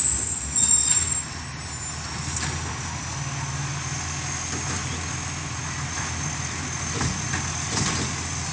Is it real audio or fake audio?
real